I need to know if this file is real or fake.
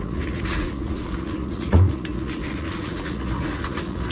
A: fake